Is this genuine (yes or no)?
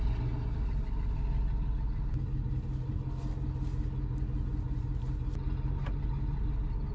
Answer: yes